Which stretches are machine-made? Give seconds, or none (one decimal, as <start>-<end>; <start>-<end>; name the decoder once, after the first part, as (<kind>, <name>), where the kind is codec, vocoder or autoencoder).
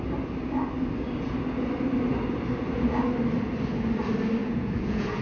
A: 4.4-5.2 (vocoder, Vocos)